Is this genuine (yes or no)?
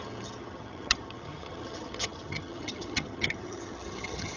no